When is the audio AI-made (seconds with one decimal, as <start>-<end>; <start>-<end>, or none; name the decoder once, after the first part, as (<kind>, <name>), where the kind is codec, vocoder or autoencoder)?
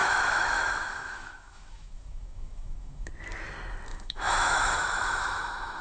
0.0-3.1 (autoencoder, DAC-VAE); 3.9-5.8